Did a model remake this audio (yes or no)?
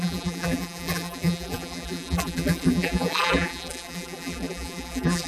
yes